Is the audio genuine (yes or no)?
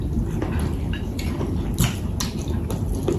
yes